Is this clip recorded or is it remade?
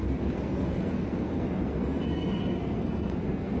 remade